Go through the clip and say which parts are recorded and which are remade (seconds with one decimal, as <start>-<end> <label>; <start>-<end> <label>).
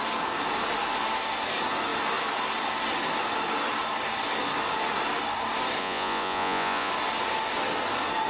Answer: 0.0-5.8 recorded; 5.8-6.9 remade; 6.9-8.3 recorded